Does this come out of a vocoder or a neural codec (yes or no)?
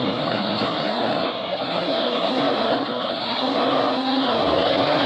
yes